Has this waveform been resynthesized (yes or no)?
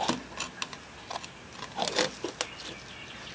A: no